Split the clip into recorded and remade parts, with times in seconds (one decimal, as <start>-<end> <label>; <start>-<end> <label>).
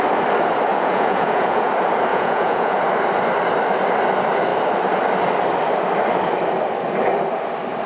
0.0-0.7 recorded; 0.7-1.7 remade; 1.7-2.1 recorded; 2.1-2.8 remade; 2.8-7.9 recorded